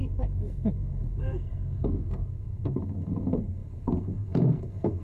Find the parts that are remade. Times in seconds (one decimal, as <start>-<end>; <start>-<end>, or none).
0.0-5.0